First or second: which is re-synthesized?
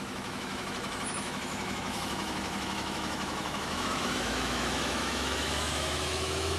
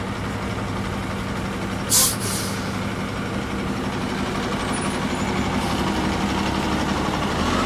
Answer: first